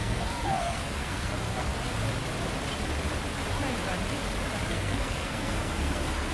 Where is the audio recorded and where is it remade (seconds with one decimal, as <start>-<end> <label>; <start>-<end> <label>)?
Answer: 0.0-1.7 remade; 1.7-4.7 recorded; 4.7-6.3 remade

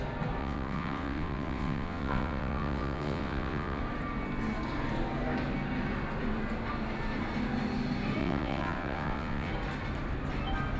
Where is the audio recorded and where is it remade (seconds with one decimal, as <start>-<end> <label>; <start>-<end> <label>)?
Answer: 0.0-0.4 recorded; 0.4-3.8 remade; 3.8-8.2 recorded; 8.2-9.5 remade; 9.5-10.8 recorded

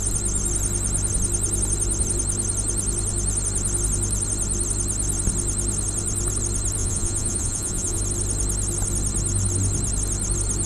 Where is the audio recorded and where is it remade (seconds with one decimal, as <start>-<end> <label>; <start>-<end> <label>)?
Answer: 0.0-6.8 recorded; 6.8-8.0 remade; 8.0-10.7 recorded

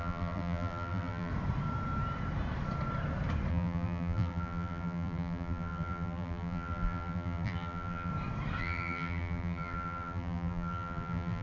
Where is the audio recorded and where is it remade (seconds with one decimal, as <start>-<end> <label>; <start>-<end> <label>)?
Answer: 0.0-1.3 remade; 1.3-3.5 recorded; 3.5-8.1 remade; 8.1-8.6 recorded; 8.6-11.4 remade

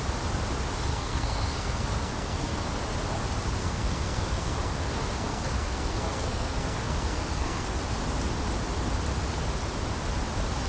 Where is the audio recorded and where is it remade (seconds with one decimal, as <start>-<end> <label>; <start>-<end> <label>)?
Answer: 0.0-0.9 recorded; 0.9-2.7 remade; 2.7-3.6 recorded; 3.6-7.8 remade; 7.8-10.7 recorded